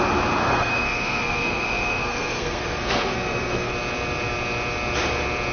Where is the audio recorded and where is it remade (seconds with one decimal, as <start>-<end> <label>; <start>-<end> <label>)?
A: 0.0-0.4 recorded; 0.4-3.7 remade; 3.7-5.5 recorded